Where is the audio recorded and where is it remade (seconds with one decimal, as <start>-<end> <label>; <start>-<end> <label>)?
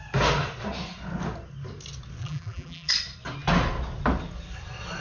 0.0-2.2 recorded; 2.2-2.9 remade; 2.9-5.0 recorded